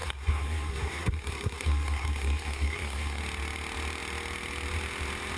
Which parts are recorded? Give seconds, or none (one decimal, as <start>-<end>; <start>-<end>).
3.2-5.4